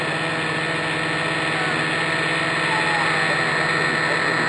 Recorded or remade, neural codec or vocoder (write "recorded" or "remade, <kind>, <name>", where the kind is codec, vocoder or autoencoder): recorded